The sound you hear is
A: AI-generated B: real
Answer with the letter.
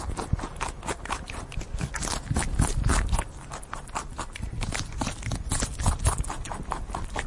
B